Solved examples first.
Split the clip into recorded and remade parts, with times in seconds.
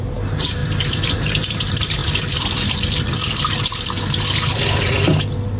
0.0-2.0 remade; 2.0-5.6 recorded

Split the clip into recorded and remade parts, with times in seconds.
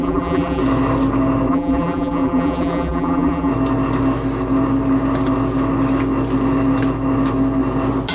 0.0-0.6 remade; 0.6-1.5 recorded; 1.5-3.5 remade; 3.5-8.1 recorded